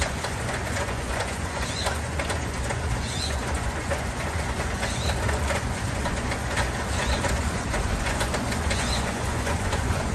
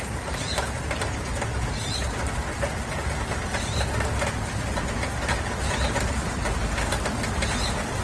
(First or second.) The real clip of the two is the second